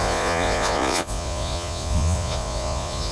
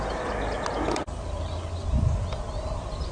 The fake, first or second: first